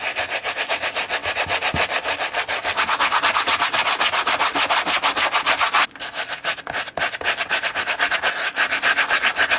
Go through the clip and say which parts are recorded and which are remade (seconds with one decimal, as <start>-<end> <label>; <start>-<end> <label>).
0.0-9.6 recorded

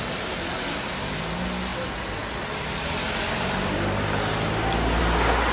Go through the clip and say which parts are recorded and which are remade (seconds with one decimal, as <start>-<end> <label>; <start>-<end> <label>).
0.0-5.5 recorded

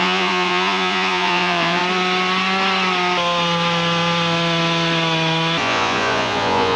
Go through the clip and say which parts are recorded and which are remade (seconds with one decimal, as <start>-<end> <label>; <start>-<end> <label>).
0.0-1.8 remade; 1.8-5.6 recorded; 5.6-6.8 remade

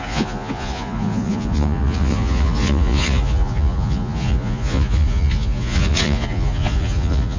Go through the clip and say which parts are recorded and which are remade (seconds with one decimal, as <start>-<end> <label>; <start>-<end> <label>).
0.0-7.4 remade

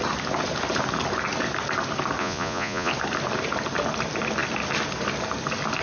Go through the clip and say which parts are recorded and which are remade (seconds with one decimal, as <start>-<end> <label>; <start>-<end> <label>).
0.0-2.2 recorded; 2.2-2.9 remade; 2.9-5.8 recorded